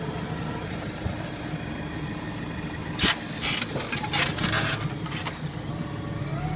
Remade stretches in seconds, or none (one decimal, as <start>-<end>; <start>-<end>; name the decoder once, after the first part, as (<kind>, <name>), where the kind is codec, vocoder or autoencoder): 0.4-3.1 (vocoder, BigVGAN v2)